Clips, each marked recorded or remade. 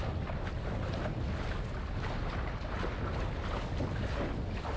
recorded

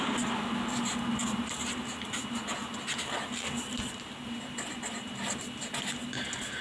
recorded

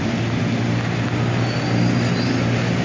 recorded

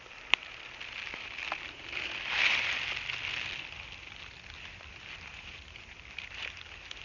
recorded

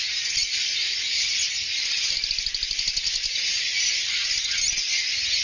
recorded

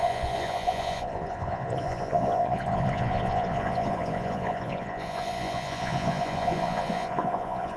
remade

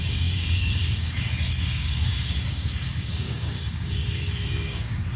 remade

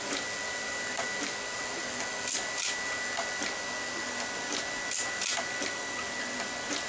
recorded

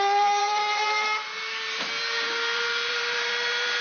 remade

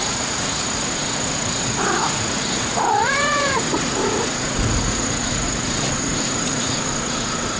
remade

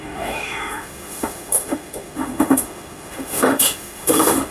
remade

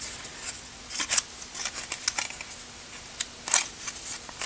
recorded